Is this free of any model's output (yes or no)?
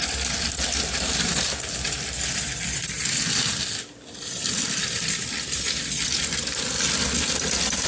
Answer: yes